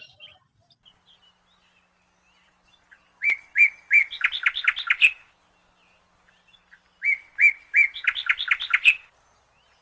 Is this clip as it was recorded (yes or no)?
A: yes